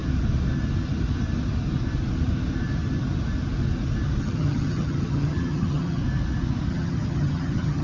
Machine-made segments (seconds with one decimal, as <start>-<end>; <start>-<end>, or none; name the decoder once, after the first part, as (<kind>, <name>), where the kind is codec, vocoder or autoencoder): 4.2-6.0 (vocoder, HiFi-GAN); 6.7-7.8